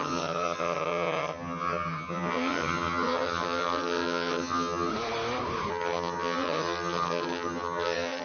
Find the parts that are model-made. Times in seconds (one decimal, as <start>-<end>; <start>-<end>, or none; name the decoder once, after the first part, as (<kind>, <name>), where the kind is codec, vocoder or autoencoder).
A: 0.0-4.9 (vocoder, HiFi-GAN); 5.7-8.2